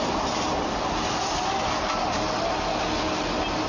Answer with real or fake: real